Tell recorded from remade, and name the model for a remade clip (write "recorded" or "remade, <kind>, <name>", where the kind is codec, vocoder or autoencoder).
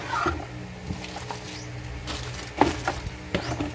recorded